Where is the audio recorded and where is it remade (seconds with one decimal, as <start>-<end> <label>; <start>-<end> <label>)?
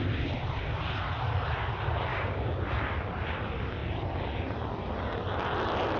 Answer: 0.0-2.1 recorded; 2.1-2.6 remade; 2.6-6.0 recorded